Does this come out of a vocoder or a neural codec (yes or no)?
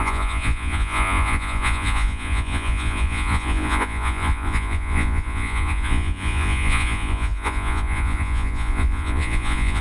yes